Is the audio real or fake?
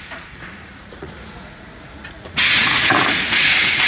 fake